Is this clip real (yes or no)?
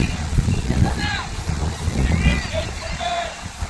no